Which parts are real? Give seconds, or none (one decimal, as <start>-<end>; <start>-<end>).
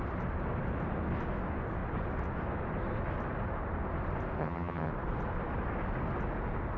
0.0-4.4; 4.9-6.8